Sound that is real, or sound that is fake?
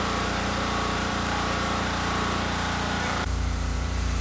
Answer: fake